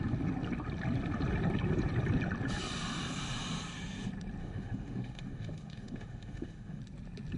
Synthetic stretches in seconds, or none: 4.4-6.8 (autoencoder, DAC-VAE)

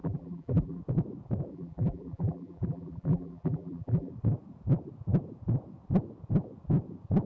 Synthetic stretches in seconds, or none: 0.0-0.8 (vocoder, BigVGAN v2); 1.5-4.1

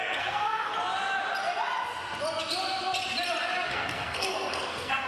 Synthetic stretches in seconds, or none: 0.0-0.7 (codec, SNAC); 3.7-5.1

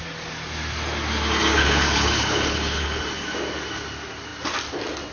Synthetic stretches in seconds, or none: 1.6-3.0 (codec, HILCodec)

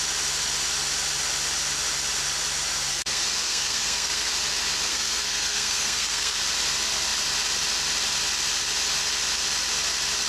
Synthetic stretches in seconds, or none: 2.9-4.3 (codec, SNAC); 4.9-6.4

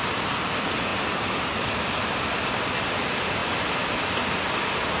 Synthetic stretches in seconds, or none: none